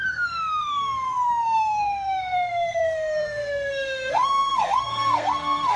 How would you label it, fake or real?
fake